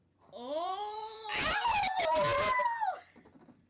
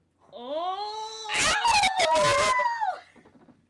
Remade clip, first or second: first